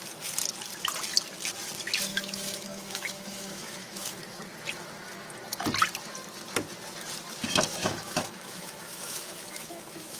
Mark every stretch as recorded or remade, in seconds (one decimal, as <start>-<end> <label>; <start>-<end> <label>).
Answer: 0.0-2.1 recorded; 2.1-4.2 remade; 4.2-7.8 recorded; 7.8-10.2 remade